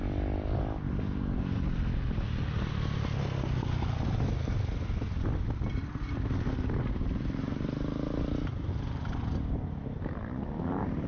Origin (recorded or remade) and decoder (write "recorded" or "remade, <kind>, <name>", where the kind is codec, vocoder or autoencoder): recorded